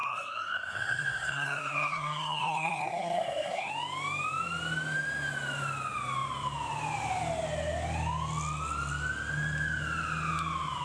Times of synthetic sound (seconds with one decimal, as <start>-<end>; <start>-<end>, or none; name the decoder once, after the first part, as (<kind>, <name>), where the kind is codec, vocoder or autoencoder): 0.0-3.7 (codec, SNAC)